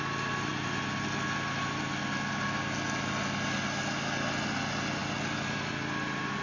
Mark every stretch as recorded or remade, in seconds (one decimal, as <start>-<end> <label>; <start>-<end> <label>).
0.0-6.4 recorded